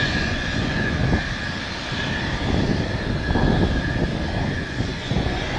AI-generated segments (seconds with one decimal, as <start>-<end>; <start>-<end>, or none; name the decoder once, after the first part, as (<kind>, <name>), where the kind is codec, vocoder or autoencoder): 0.0-1.0 (vocoder, Vocos); 4.4-5.6

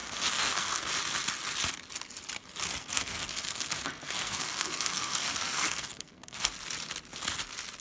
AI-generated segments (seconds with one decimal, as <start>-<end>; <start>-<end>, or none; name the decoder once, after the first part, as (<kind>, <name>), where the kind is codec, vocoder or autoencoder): 0.0-0.9 (codec, SNAC); 2.8-6.5

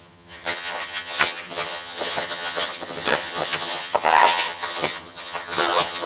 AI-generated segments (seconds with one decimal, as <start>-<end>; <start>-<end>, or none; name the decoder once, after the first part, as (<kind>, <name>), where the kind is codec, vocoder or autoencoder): 0.0-6.1 (vocoder, HiFi-GAN)

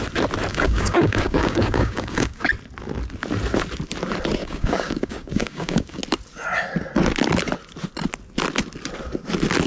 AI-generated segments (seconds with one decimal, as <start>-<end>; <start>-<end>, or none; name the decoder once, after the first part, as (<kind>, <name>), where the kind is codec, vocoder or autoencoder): 0.5-2.5 (codec, DAC); 4.4-6.0